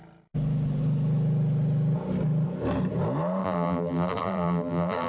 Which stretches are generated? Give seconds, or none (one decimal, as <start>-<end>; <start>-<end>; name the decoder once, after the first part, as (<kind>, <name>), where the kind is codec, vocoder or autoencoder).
3.4-5.1 (vocoder, BigVGAN v2)